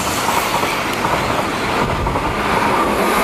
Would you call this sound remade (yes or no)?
no